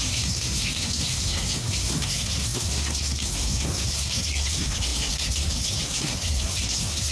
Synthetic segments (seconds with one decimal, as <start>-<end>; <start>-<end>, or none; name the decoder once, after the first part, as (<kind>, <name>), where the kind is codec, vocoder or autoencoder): 0.0-7.1 (codec, SNAC)